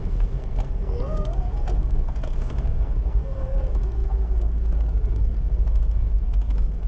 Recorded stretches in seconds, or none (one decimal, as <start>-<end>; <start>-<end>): none